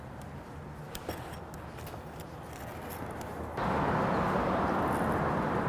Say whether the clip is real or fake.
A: real